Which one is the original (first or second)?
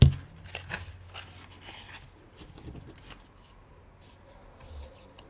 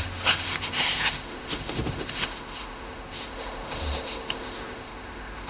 first